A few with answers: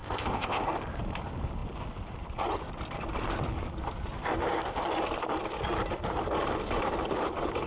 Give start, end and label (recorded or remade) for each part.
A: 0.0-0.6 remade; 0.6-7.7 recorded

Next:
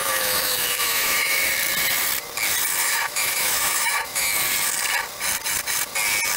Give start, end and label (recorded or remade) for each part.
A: 0.0-1.5 remade; 1.5-2.8 recorded; 2.8-4.3 remade; 4.3-6.4 recorded

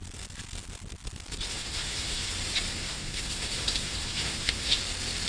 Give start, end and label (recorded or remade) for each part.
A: 0.0-1.5 recorded; 1.5-2.3 remade; 2.3-2.7 recorded; 2.7-4.8 remade; 4.8-5.3 recorded

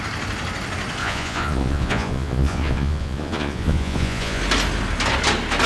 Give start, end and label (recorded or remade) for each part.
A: 0.0-1.0 recorded; 1.0-4.4 remade; 4.4-5.7 recorded

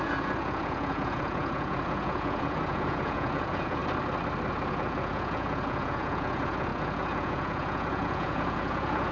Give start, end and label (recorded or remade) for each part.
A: 0.0-3.8 remade; 3.8-4.5 recorded; 4.5-9.1 remade

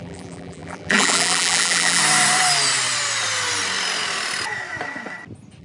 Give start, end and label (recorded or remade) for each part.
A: 0.0-2.0 remade; 2.0-5.6 recorded

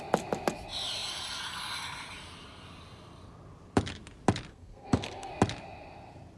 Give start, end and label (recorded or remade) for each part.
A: 0.0-4.5 recorded; 4.5-5.3 remade; 5.3-6.4 recorded

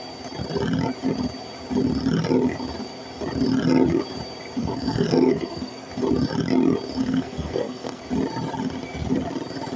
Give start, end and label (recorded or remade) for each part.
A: 0.0-4.6 recorded; 4.6-5.9 remade; 5.9-7.0 recorded; 7.0-8.0 remade; 8.0-9.8 recorded